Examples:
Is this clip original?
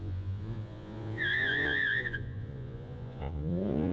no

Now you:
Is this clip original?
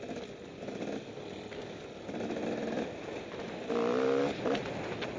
yes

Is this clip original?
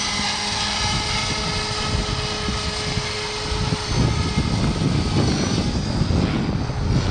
yes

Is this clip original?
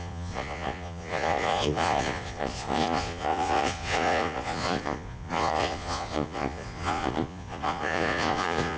no